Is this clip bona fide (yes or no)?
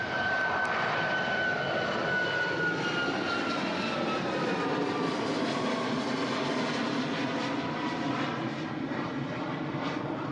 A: no